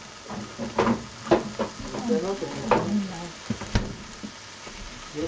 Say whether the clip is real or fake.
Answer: real